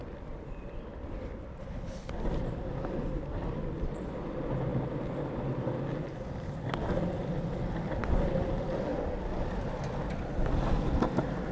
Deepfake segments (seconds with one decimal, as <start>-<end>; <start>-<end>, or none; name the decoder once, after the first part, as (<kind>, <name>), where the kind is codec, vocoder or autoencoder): 1.6-2.1 (codec, HILCodec)